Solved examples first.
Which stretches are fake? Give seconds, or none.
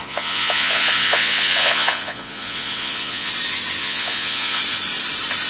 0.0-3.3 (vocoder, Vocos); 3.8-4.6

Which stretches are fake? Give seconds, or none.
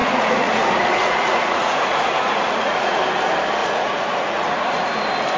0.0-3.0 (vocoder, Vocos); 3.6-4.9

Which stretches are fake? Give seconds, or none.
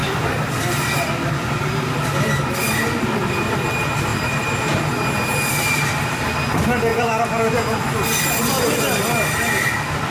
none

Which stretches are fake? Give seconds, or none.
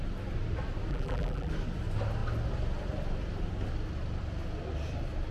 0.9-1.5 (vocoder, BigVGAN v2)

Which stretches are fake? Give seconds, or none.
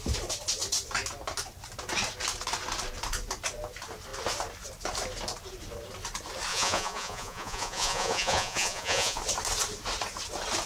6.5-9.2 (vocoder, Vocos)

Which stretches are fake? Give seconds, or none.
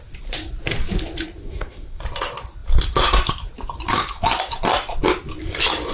1.4-2.0 (codec, SNAC)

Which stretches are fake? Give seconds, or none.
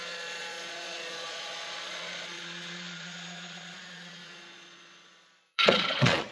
0.0-6.3 (vocoder, Vocos)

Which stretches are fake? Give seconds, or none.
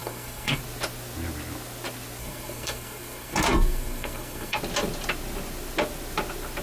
0.0-0.6 (codec, SNAC); 2.2-4.6